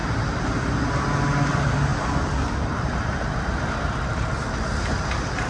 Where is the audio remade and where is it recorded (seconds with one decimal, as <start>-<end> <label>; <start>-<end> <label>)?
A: 0.0-5.5 recorded